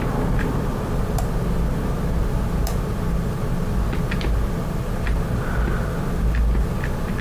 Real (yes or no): yes